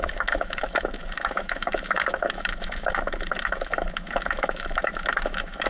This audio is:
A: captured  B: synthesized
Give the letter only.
B